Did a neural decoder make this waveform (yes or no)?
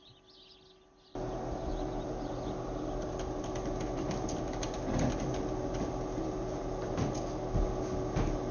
no